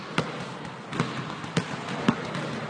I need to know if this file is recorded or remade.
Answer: recorded